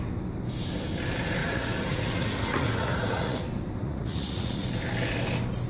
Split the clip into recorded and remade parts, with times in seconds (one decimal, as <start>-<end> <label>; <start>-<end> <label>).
0.0-1.4 recorded; 1.4-3.4 remade; 3.4-3.8 recorded; 3.8-4.7 remade; 4.7-5.7 recorded